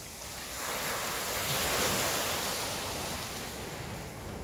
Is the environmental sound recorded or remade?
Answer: recorded